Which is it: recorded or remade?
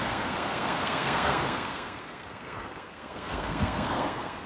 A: remade